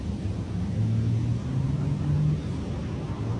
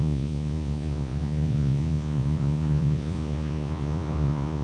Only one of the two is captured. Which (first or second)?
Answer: first